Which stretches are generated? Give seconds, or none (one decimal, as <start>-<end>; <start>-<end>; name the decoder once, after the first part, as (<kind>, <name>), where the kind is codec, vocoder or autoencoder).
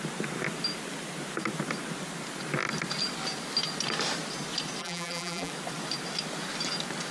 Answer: 4.8-5.5 (vocoder, BigVGAN v2)